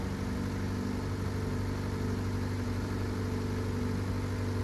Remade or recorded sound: recorded